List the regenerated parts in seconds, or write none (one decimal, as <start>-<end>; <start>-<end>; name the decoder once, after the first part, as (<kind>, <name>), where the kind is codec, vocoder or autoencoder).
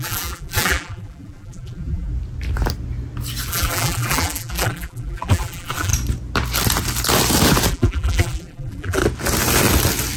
0.0-2.1 (vocoder, BigVGAN v2); 3.5-5.9; 7.7-9.0